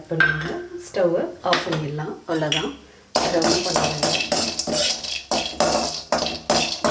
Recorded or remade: recorded